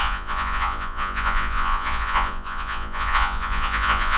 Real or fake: fake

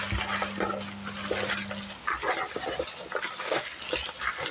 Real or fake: real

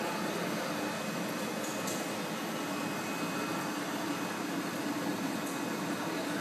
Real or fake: real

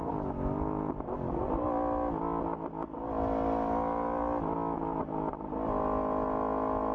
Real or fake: real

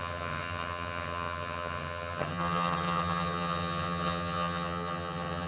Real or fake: fake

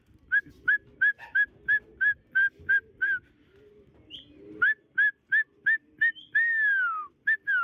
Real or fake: real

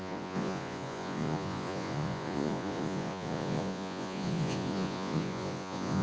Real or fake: fake